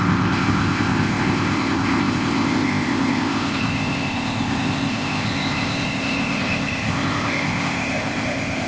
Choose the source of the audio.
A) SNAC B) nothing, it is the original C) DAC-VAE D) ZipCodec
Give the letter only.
D